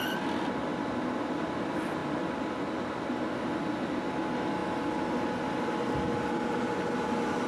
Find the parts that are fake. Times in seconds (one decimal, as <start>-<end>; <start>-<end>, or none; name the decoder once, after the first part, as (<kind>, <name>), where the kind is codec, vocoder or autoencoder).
none